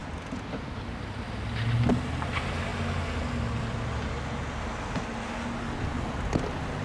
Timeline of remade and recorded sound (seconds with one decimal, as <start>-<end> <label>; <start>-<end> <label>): 0.0-6.8 recorded